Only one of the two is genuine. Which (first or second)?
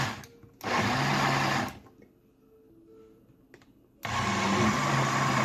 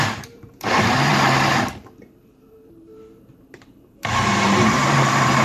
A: first